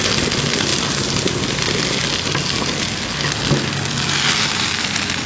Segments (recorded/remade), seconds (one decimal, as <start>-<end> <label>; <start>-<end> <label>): 0.0-5.3 recorded